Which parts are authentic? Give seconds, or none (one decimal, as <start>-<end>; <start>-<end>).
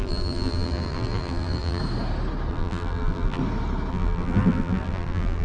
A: 1.8-2.5; 3.4-3.9